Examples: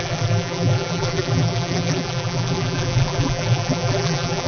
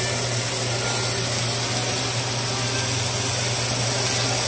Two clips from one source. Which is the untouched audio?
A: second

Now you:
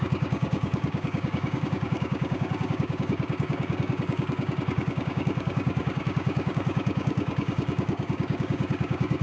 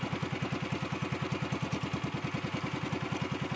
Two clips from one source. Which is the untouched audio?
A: second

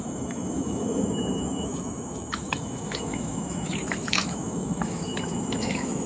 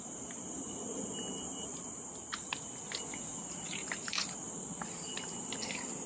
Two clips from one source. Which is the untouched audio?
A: second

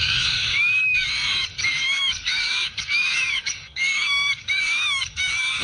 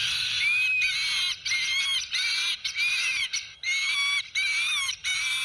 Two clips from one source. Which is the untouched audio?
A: second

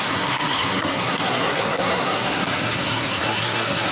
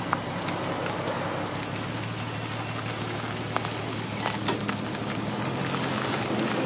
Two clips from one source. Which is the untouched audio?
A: second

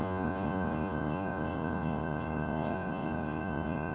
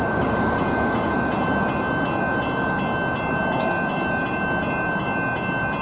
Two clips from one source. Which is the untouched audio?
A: second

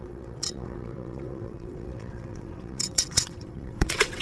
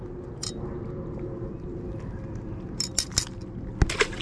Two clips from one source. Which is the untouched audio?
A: second